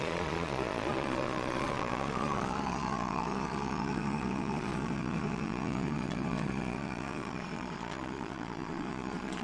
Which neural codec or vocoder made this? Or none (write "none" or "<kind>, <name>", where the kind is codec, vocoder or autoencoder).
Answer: vocoder, Vocos